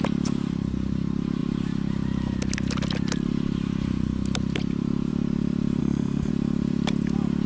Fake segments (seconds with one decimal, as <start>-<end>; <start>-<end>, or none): 5.8-6.3